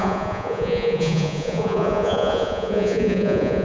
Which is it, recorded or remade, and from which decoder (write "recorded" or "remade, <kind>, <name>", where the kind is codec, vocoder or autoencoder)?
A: remade, vocoder, Vocos